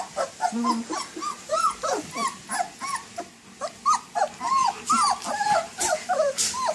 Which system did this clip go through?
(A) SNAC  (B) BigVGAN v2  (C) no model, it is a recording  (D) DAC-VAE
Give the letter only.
C